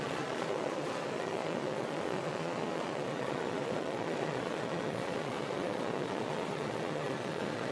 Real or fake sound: fake